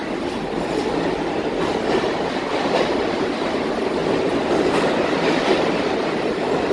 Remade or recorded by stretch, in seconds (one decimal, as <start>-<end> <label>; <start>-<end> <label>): 0.0-6.7 recorded